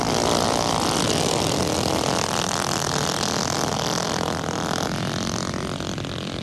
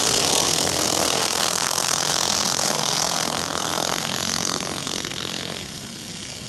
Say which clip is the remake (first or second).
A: second